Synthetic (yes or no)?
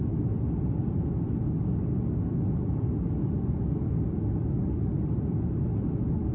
no